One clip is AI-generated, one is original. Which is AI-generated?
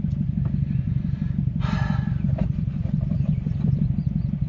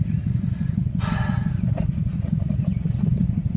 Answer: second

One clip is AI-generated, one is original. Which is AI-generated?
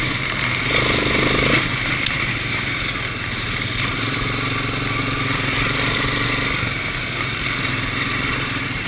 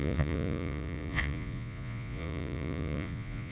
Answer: second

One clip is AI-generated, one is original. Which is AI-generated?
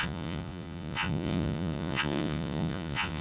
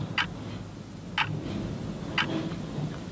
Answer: first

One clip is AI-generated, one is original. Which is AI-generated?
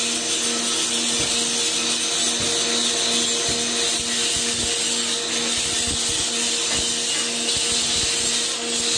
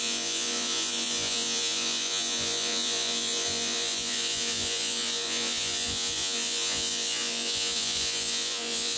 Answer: second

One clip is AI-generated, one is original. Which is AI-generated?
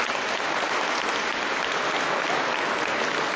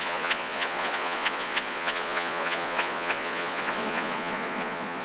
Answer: second